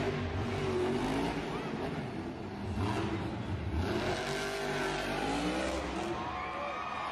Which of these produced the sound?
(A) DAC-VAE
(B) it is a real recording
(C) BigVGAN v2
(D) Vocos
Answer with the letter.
B